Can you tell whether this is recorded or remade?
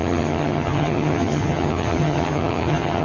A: remade